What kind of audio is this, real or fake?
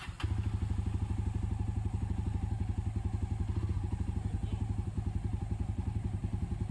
real